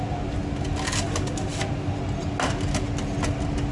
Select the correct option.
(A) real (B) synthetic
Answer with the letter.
A